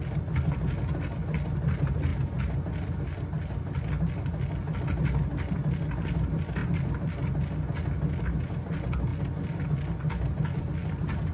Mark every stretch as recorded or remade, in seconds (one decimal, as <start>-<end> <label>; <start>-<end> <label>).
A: 0.0-11.3 recorded